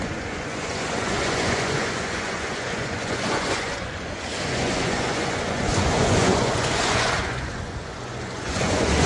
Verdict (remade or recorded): remade